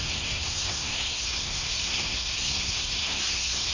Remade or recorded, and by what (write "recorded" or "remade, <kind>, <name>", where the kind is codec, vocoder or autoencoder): remade, codec, SNAC